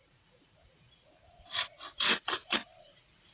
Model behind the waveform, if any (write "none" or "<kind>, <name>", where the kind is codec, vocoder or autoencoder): vocoder, Vocos